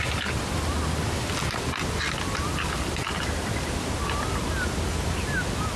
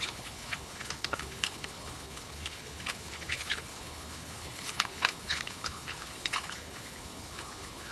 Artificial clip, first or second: second